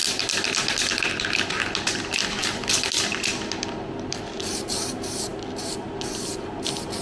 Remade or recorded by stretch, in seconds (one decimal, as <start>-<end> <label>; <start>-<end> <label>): 0.0-7.0 recorded